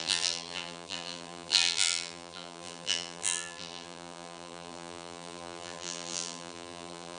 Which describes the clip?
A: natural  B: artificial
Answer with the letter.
B